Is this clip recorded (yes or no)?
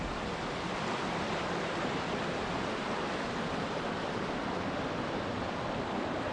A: yes